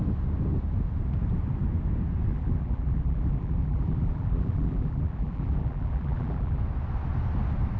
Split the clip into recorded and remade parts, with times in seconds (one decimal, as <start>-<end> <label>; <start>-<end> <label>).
0.0-2.3 recorded; 2.3-6.6 remade; 6.6-7.8 recorded